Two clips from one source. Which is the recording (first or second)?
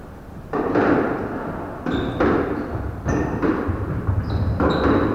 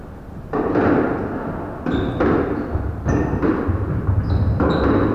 second